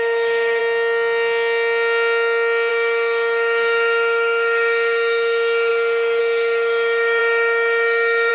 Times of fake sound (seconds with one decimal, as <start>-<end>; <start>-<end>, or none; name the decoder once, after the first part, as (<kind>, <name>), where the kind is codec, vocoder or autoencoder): 0.0-0.6 (autoencoder, DAC-VAE); 2.7-8.3